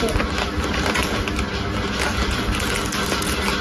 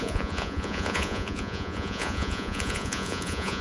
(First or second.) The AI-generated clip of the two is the second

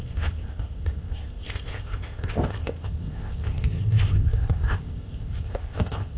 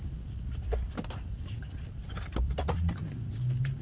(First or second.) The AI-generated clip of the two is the first